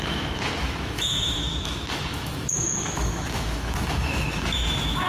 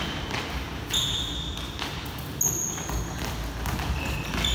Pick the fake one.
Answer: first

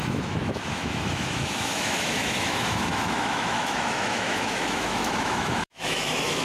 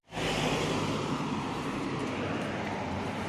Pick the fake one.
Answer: first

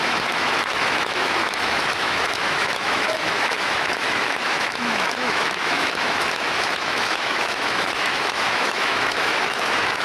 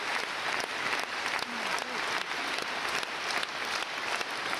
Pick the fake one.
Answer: first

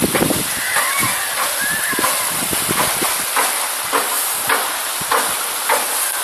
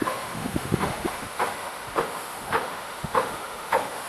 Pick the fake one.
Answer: second